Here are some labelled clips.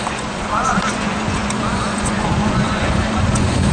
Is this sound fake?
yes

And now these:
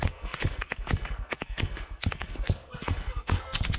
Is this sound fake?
yes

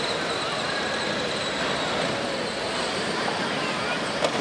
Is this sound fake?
no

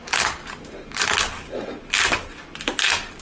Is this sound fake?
no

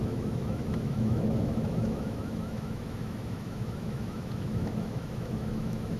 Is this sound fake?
yes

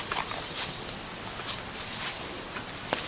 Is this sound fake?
no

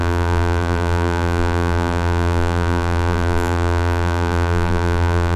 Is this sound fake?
yes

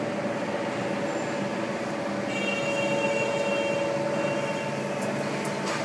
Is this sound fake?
no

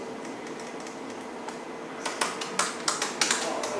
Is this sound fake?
no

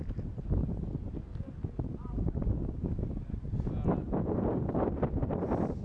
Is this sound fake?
no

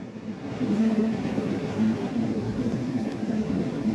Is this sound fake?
yes